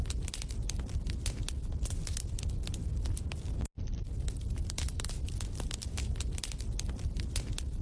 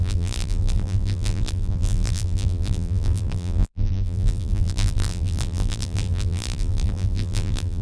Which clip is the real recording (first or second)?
first